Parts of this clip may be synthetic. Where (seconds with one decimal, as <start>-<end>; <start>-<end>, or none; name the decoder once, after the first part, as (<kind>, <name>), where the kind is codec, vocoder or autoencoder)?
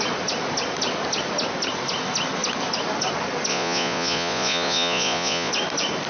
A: 3.5-5.5 (vocoder, Vocos)